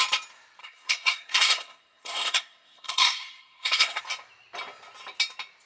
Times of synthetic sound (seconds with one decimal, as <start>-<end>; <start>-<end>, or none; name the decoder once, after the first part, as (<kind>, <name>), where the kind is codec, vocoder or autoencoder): 0.6-4.0 (codec, SNAC)